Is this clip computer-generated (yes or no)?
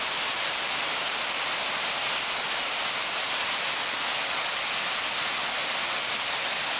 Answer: no